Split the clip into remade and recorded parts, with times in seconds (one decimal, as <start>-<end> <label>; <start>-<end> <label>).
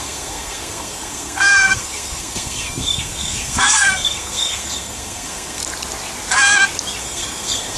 0.0-5.6 remade; 5.6-7.0 recorded; 7.0-7.8 remade